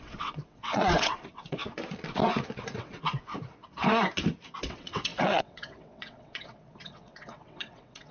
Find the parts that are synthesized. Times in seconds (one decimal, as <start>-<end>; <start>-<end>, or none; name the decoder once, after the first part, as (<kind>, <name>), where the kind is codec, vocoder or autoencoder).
0.0-1.6 (vocoder, WaveNeXt); 2.6-3.3; 4.6-8.1